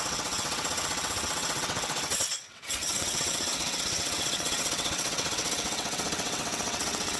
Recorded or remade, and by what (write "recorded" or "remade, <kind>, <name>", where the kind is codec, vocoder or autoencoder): remade, vocoder, WaveNeXt